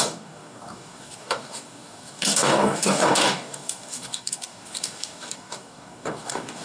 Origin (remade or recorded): remade